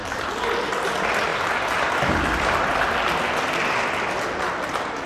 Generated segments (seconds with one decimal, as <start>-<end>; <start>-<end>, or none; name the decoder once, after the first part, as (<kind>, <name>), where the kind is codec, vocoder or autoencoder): none